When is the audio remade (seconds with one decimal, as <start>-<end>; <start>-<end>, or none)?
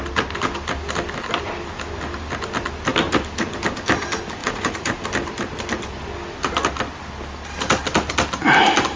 4.4-5.0